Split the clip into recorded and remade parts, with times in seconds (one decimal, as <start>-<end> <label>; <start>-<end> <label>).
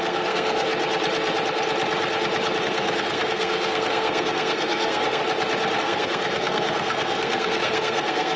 0.0-0.7 remade; 0.7-2.6 recorded; 2.6-5.2 remade; 5.2-5.8 recorded; 5.8-8.4 remade